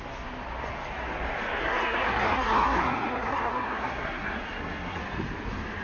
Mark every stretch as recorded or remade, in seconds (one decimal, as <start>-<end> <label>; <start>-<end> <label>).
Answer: 0.0-1.6 recorded; 1.6-5.0 remade; 5.0-5.8 recorded